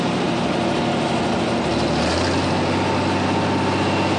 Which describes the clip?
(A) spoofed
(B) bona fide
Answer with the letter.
B